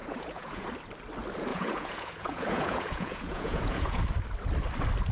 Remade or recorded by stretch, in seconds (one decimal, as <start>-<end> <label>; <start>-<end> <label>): 0.0-0.7 remade; 0.7-1.5 recorded; 1.5-4.0 remade; 4.0-5.1 recorded